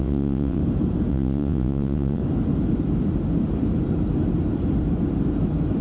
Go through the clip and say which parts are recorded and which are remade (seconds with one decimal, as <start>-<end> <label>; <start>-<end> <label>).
0.0-0.6 remade; 0.6-1.1 recorded; 1.1-2.2 remade; 2.2-5.8 recorded